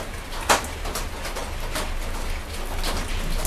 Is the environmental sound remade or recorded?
recorded